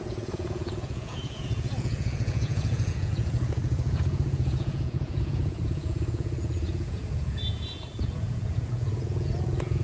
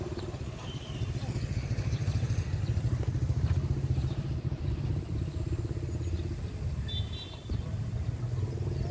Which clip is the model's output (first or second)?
first